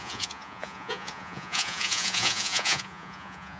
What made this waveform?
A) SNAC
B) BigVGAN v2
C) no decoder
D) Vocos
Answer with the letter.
D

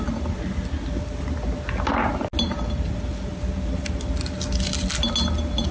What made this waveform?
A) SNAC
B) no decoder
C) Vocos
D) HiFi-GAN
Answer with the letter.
B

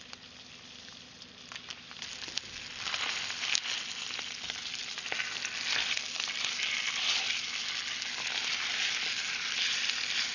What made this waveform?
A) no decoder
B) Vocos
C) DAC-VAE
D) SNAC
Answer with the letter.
A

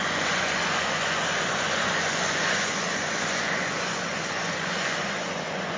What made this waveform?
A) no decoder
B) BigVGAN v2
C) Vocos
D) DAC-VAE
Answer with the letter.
C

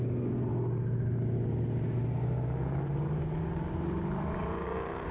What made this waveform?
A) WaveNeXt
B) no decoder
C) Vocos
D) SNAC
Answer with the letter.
B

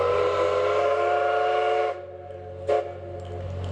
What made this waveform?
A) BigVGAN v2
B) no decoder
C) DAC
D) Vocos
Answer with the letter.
B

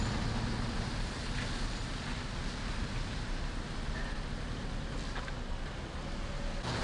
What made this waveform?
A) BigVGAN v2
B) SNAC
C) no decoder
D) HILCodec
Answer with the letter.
C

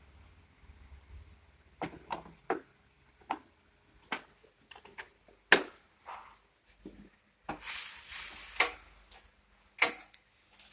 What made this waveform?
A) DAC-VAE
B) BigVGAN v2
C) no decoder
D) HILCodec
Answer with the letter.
C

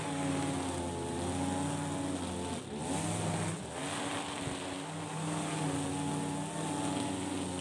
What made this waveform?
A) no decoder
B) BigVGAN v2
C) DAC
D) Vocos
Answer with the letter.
A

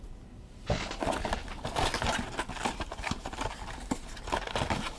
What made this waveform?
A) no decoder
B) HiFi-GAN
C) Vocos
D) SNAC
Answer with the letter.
A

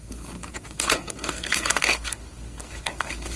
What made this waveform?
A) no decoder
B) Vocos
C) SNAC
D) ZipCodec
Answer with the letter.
C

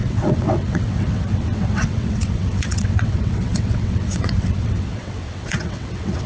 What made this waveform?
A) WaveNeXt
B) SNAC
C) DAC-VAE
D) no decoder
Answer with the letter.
A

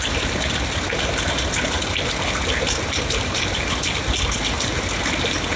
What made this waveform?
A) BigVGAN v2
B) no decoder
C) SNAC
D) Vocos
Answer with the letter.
B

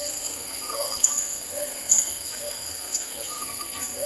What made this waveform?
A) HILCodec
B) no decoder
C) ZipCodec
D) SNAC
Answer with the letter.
D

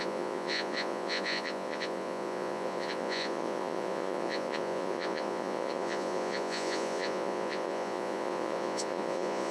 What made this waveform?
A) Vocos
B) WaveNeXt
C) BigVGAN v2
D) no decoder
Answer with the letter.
A